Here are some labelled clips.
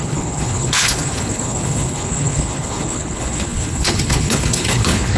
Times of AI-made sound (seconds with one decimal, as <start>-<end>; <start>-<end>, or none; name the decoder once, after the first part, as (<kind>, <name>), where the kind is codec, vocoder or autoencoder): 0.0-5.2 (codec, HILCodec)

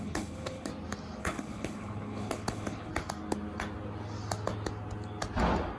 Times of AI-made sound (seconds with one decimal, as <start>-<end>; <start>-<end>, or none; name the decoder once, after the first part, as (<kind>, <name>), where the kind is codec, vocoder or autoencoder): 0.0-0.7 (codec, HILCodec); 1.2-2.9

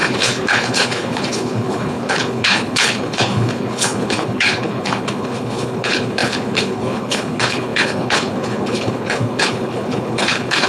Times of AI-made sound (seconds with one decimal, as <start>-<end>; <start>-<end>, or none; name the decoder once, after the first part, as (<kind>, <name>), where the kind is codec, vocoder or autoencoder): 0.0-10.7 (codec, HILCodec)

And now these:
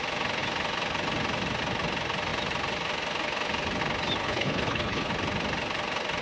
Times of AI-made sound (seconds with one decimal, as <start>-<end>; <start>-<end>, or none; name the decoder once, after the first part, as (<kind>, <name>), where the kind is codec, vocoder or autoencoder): 4.2-5.1 (codec, HILCodec)

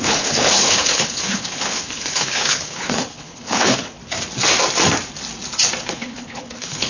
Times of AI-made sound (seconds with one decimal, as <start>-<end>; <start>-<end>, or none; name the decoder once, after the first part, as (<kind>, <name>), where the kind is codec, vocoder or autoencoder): 0.0-4.0 (codec, HILCodec); 5.8-6.9

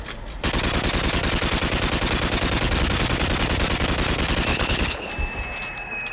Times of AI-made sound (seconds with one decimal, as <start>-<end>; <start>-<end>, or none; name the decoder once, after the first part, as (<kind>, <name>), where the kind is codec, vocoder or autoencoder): 4.5-5.1 (codec, HILCodec)

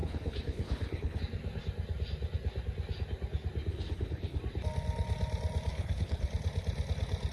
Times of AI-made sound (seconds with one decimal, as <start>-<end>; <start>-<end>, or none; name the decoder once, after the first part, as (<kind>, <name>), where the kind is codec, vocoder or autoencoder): 0.0-1.2 (codec, HILCodec); 3.7-4.4; 5.7-6.3

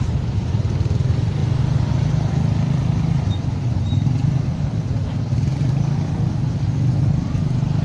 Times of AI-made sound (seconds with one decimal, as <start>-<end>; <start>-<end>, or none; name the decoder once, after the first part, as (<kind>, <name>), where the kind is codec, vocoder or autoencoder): none